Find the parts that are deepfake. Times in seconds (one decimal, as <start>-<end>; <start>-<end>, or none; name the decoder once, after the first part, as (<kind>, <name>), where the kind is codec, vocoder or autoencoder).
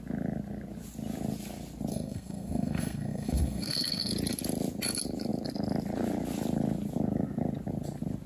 1.9-4.1 (codec, SNAC)